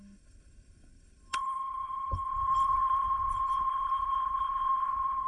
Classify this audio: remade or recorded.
remade